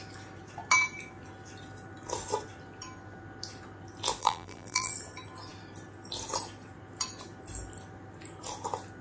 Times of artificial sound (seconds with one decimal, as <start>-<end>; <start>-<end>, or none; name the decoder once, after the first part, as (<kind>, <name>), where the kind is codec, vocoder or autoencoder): 4.2-4.9 (vocoder, BigVGAN v2)